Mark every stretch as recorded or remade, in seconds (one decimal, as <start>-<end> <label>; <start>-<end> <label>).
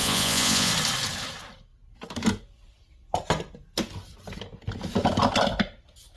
0.0-0.7 remade; 0.7-6.2 recorded